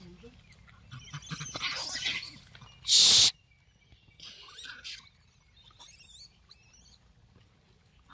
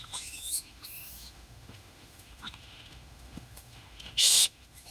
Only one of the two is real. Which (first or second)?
first